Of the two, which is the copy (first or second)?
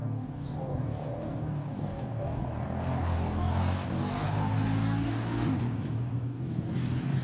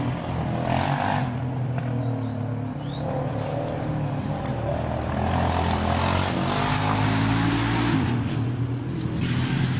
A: first